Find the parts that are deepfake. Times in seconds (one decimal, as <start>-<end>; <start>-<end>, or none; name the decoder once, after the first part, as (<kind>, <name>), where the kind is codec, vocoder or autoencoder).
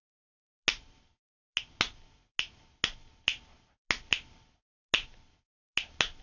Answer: none